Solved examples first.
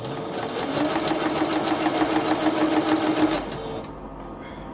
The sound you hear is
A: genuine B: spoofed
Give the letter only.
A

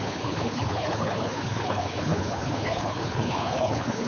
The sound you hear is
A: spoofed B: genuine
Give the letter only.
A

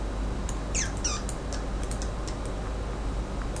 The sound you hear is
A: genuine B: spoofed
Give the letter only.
A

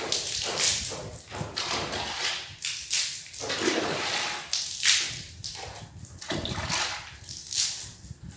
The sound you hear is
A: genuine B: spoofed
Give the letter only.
A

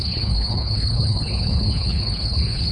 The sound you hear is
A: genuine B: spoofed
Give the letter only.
B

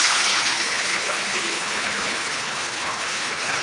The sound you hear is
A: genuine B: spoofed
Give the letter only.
B